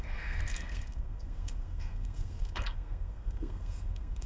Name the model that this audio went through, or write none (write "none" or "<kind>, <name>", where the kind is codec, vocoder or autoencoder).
codec, SNAC